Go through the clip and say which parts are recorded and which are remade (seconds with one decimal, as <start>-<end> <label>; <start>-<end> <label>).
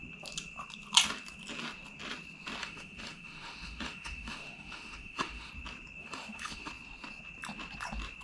0.0-2.6 recorded; 2.6-5.5 remade; 5.5-6.0 recorded; 6.0-6.7 remade; 6.7-8.2 recorded